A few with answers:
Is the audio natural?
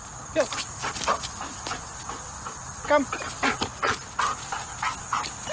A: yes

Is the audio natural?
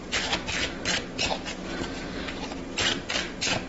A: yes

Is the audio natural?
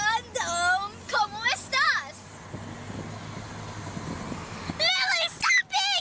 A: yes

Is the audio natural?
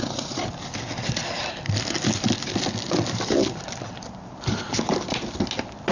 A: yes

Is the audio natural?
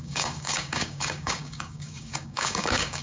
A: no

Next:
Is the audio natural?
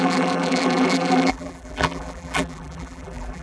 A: no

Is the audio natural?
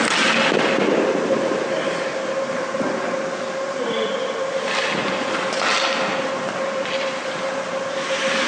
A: yes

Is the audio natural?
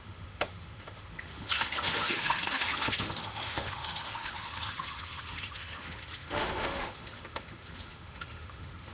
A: no